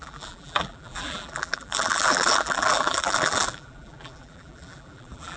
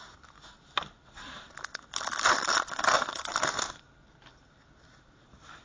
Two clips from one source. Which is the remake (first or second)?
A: first